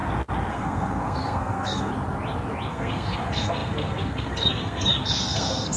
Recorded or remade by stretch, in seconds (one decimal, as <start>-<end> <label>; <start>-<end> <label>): 0.0-0.5 recorded; 0.5-1.9 remade; 1.9-2.7 recorded; 2.7-5.8 remade